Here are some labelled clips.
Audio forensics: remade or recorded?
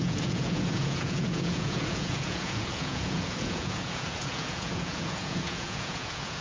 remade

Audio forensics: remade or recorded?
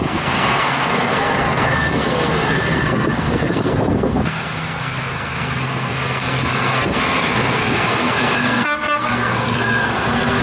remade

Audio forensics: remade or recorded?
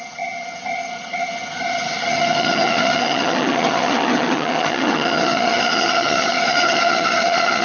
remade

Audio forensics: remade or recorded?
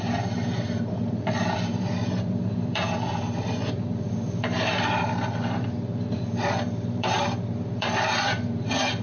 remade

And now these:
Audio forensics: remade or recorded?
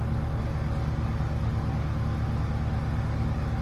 recorded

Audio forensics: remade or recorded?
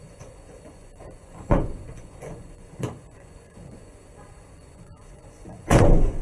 remade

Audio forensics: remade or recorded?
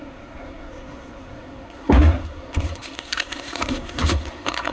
remade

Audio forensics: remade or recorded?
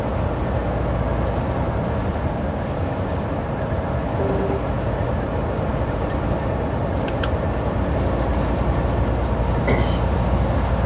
recorded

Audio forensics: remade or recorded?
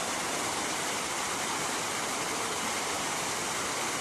remade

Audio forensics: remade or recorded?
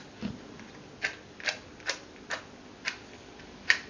recorded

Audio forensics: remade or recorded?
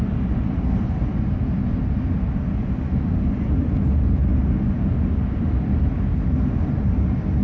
recorded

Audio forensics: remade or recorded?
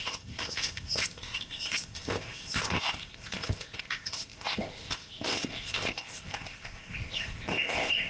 remade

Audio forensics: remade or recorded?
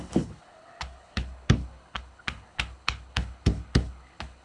remade